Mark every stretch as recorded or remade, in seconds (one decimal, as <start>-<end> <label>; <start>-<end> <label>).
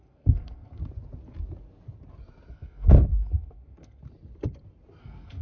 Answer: 0.0-0.8 remade; 0.8-2.5 recorded; 2.5-4.0 remade; 4.0-5.0 recorded; 5.0-5.4 remade